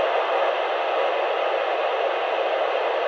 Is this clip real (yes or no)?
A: yes